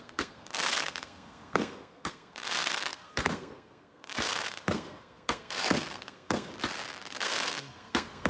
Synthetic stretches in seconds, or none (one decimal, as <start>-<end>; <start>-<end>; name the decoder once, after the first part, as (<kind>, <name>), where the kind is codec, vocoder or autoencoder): 0.0-6.5 (codec, SNAC); 7.1-8.3